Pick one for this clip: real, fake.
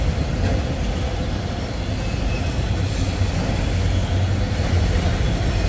real